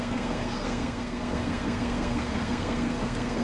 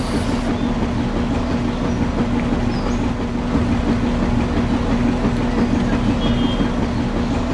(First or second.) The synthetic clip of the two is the first